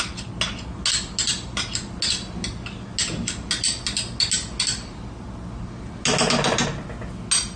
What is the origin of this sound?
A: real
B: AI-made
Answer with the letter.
A